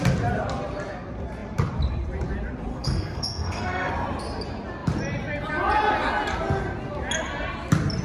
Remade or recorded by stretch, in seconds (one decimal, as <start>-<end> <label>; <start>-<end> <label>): 0.0-2.7 recorded; 2.7-3.9 remade; 3.9-8.0 recorded